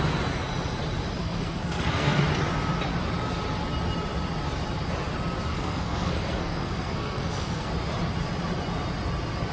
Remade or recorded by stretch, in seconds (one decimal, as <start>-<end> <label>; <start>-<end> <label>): 0.0-1.2 recorded; 1.2-2.2 remade; 2.2-5.5 recorded; 5.5-7.7 remade; 7.7-9.5 recorded